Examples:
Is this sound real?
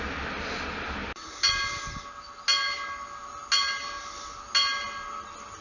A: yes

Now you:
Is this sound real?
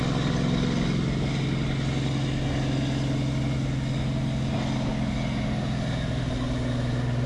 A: yes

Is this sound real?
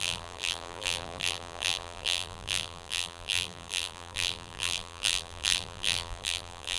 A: no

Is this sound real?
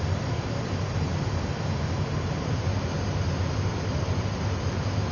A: yes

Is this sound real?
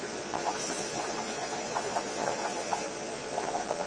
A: no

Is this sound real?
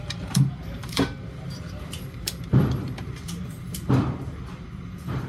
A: no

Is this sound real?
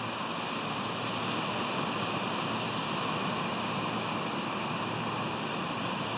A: yes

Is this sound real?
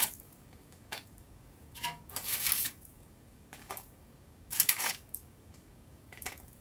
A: no